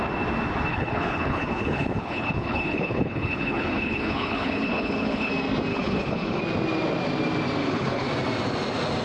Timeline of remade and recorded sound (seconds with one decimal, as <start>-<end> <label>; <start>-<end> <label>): 0.0-0.7 recorded; 0.7-5.3 remade; 5.3-5.7 recorded; 5.7-6.4 remade; 6.4-7.6 recorded; 7.6-8.1 remade; 8.1-9.0 recorded